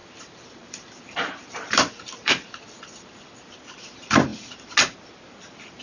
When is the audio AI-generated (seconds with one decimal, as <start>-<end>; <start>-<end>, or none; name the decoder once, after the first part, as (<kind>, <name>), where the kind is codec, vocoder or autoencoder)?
0.0-3.5 (vocoder, BigVGAN v2)